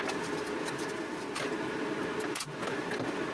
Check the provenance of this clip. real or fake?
real